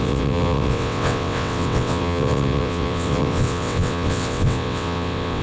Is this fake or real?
fake